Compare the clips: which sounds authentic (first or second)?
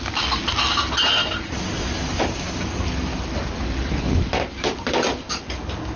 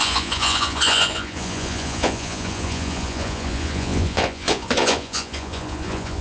first